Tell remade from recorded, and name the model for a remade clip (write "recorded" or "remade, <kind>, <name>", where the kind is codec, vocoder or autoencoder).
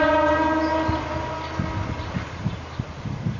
recorded